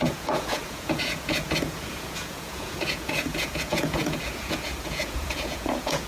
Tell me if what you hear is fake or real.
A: fake